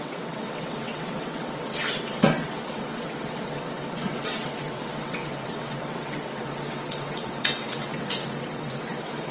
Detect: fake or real fake